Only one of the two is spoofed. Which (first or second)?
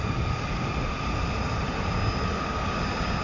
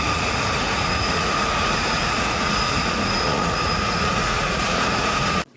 second